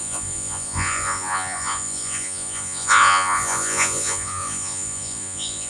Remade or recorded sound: remade